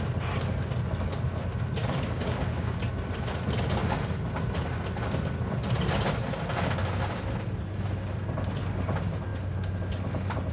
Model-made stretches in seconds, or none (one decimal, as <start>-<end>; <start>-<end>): 1.8-2.8